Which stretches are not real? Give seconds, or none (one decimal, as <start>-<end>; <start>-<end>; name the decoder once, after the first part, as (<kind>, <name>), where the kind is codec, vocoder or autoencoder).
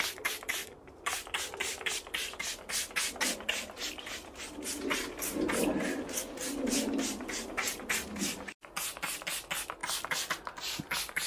none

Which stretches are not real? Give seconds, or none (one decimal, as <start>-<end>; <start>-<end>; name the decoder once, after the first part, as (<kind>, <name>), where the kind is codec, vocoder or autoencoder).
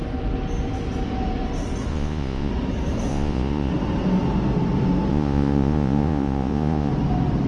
1.9-2.5 (vocoder, Vocos); 3.1-3.7; 5.1-6.9